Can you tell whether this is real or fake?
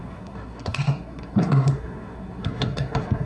fake